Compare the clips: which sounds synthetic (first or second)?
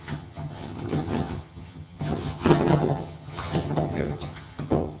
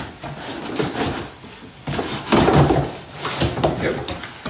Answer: first